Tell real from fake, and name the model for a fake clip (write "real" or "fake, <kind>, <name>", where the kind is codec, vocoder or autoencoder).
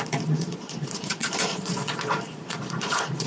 fake, vocoder, Vocos